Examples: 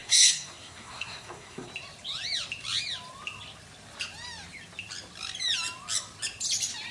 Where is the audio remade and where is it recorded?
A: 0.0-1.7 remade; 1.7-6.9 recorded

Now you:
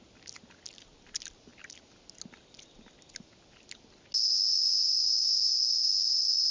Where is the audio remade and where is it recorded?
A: 0.0-6.5 recorded

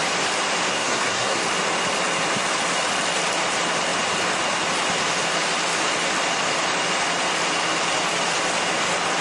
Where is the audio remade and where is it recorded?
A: 0.0-0.7 recorded; 0.7-1.4 remade; 1.4-9.2 recorded